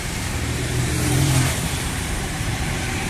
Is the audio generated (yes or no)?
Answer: yes